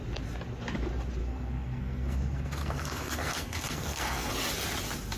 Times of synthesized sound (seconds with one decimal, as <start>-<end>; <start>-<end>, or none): 1.2-4.3